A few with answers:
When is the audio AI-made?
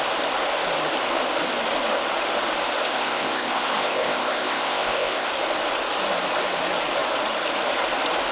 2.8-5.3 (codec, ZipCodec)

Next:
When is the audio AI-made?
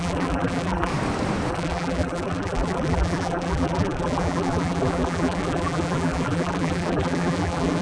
0.0-0.9 (vocoder, BigVGAN v2); 1.5-7.8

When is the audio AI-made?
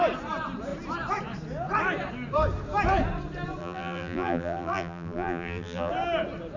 3.6-5.9 (vocoder, BigVGAN v2)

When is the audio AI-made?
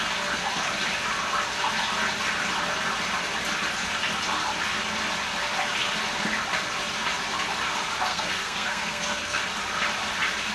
8.1-9.4 (codec, SNAC)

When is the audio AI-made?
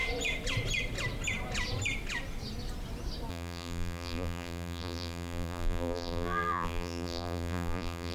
3.3-8.1 (vocoder, BigVGAN v2)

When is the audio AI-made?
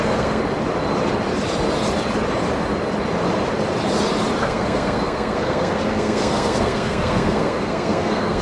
0.0-0.4 (codec, SNAC); 4.4-8.4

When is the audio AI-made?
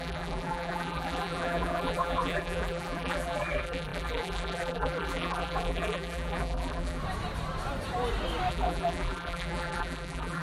0.0-7.0 (vocoder, BigVGAN v2); 8.5-10.4